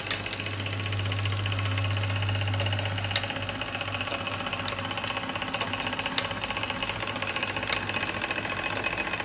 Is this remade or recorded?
recorded